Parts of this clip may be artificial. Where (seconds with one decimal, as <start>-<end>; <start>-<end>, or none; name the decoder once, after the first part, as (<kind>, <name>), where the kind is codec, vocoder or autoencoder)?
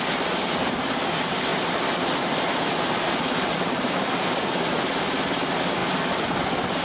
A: none